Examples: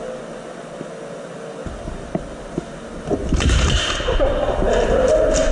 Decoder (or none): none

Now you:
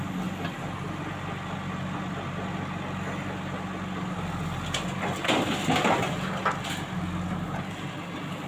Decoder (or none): none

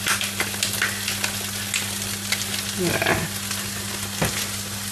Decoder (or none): none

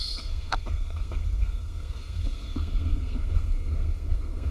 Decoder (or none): codec, SNAC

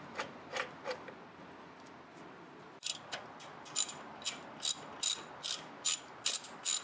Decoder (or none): none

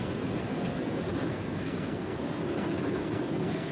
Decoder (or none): codec, SNAC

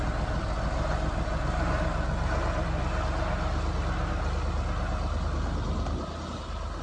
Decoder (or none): none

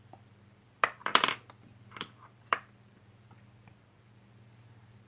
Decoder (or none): vocoder, BigVGAN v2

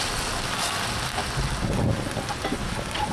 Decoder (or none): none